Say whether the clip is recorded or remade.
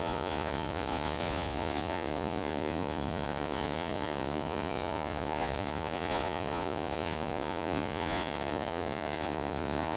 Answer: remade